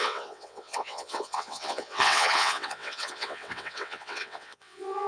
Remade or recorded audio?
remade